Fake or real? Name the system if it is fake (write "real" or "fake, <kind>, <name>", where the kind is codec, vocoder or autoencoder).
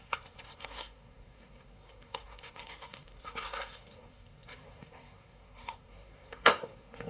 fake, codec, SNAC